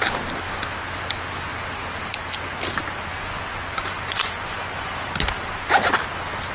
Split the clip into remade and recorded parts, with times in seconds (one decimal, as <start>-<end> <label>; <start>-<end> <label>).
0.0-3.1 recorded; 3.1-4.9 remade; 4.9-6.5 recorded

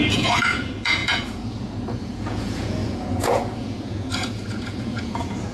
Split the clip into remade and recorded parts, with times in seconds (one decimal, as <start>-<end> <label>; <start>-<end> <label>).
0.0-5.5 remade